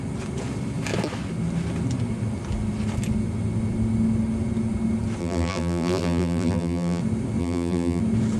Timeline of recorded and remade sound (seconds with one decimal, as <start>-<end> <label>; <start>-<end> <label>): 0.0-5.2 recorded; 5.2-7.0 remade; 7.0-7.4 recorded; 7.4-8.0 remade; 8.0-8.4 recorded